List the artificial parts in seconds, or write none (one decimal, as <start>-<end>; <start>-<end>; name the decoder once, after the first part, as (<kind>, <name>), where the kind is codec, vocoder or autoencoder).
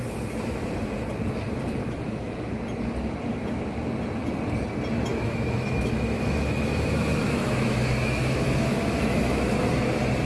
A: 1.8-2.5 (autoencoder, DAC-VAE); 5.1-9.7